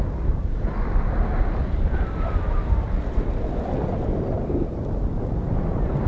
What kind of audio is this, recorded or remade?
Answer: recorded